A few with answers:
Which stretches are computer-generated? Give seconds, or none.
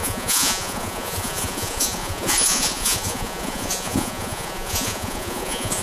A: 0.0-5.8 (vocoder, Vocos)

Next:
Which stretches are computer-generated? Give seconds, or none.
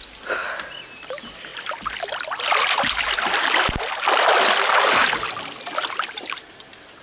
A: none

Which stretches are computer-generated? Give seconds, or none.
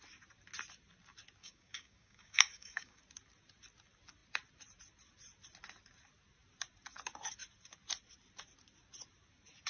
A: 1.4-3.0 (codec, DAC)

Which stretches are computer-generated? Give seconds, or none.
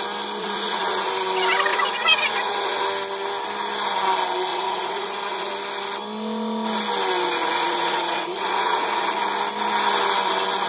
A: 0.4-1.1 (vocoder, Vocos); 1.7-2.8; 4.5-5.5; 7.4-9.1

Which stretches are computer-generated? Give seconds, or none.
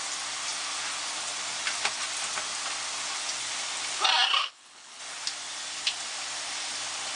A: 4.4-5.0 (codec, HILCodec)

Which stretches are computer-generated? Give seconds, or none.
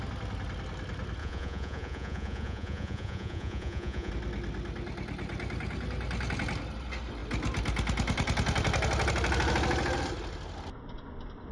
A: 1.2-4.1 (vocoder, Vocos)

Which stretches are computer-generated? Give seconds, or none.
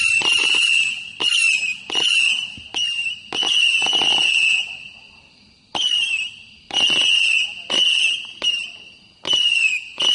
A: none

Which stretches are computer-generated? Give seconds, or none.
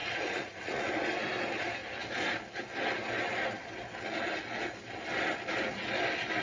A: 0.0-0.9 (vocoder, Vocos)